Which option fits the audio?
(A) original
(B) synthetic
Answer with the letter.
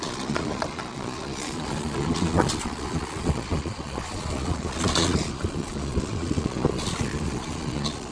B